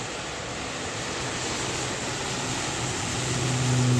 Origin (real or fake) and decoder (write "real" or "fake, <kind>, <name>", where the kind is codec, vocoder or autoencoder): real